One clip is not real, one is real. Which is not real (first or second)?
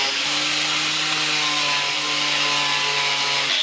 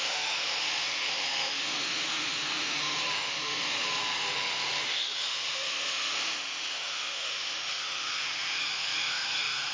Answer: second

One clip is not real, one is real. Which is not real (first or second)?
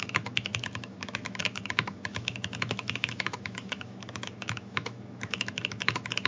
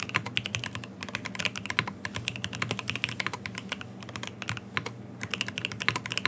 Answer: first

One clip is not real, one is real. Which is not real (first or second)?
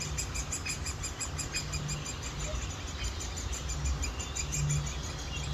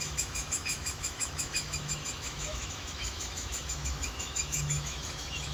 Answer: second